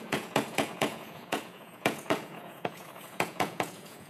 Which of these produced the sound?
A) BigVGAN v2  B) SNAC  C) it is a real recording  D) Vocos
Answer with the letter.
D